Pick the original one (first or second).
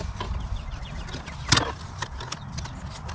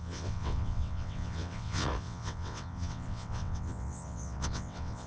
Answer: first